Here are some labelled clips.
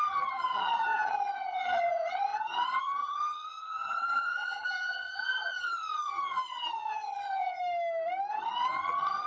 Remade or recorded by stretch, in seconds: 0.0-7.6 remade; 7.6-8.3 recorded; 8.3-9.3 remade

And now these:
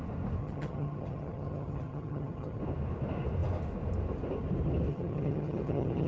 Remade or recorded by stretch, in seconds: 0.0-0.4 recorded; 0.4-2.6 remade; 2.6-4.9 recorded; 4.9-6.1 remade